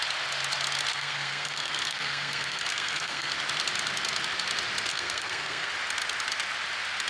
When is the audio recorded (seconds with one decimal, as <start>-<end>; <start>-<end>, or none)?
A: 0.0-0.9; 3.3-4.9; 5.7-7.1